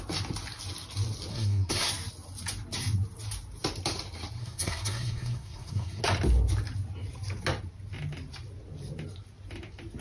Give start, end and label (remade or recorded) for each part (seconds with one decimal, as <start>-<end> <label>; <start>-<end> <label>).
0.0-1.3 recorded; 1.3-1.9 remade; 1.9-4.4 recorded; 4.4-6.0 remade; 6.0-10.0 recorded